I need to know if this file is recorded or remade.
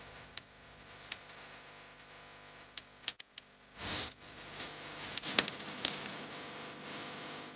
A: recorded